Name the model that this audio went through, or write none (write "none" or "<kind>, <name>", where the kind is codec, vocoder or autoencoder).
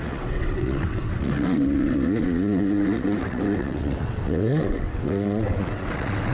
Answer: vocoder, WaveNeXt